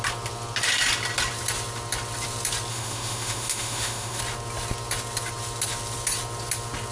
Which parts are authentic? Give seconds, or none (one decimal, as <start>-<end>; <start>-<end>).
0.0-2.7; 4.2-6.9